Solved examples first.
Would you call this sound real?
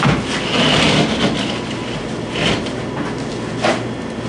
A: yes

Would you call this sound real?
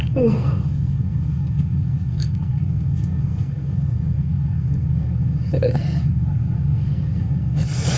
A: no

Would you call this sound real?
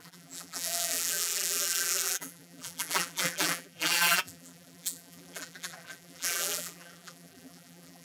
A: no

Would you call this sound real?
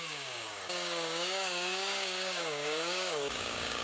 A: no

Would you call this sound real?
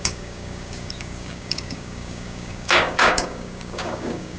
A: no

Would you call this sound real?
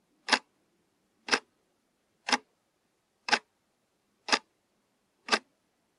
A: no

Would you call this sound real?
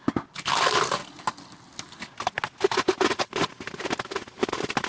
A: yes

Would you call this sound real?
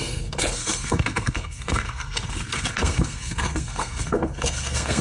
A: no